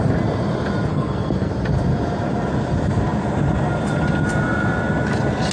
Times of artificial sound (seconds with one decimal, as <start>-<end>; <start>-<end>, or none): 0.9-1.5